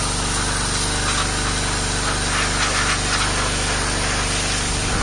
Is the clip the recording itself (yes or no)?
yes